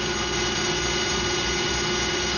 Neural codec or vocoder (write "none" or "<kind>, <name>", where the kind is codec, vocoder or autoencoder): none